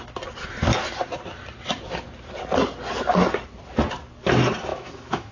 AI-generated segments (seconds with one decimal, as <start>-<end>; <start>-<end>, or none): 4.7-5.3